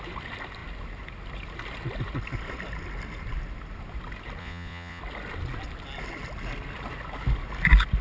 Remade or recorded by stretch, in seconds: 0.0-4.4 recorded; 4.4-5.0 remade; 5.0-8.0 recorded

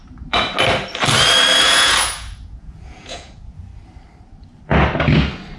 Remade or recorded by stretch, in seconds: 0.0-1.6 recorded; 1.6-3.7 remade; 3.7-5.6 recorded